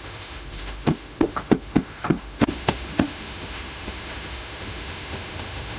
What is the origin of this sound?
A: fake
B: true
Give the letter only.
A